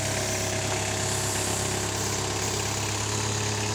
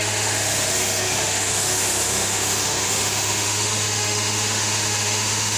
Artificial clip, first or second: second